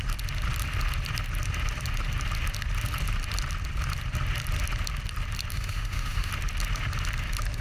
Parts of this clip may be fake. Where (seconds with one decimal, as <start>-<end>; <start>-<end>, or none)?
5.5-6.3